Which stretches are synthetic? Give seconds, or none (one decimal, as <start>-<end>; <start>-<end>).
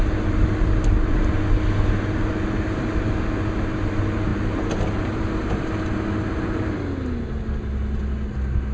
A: none